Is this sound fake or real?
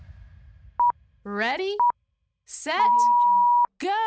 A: real